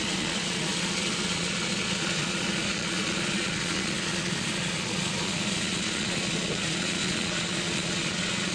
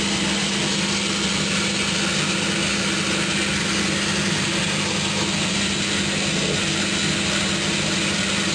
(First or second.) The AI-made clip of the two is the first